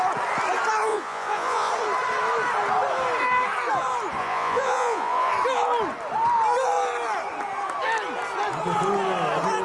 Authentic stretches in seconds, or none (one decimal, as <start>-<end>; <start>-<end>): 0.0-0.9; 1.7-4.2; 5.3-9.6